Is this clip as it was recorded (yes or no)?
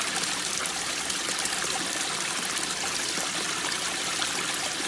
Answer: yes